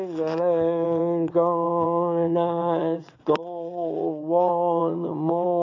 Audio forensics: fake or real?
fake